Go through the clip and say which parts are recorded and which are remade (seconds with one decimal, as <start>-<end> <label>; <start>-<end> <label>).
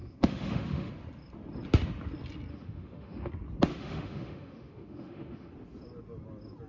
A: 0.0-0.9 remade; 0.9-2.5 recorded; 2.5-3.3 remade; 3.3-3.7 recorded; 3.7-5.5 remade; 5.5-6.7 recorded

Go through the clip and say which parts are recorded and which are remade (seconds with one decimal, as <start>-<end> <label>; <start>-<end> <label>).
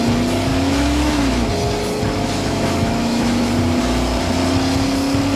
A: 0.0-0.5 recorded; 0.5-1.5 remade; 1.5-2.1 recorded; 2.1-3.5 remade; 3.5-5.4 recorded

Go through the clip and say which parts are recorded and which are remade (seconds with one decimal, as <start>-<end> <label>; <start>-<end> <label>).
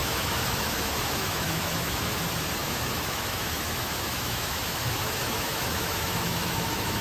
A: 0.0-2.2 remade; 2.2-2.6 recorded; 2.6-7.0 remade